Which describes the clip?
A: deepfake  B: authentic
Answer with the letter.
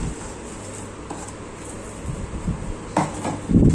B